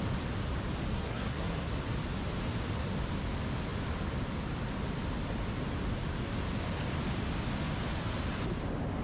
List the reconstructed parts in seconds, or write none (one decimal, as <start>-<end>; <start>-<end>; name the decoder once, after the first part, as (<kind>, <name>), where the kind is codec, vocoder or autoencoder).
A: 0.9-1.7 (codec, SNAC)